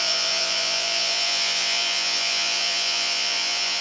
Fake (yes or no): yes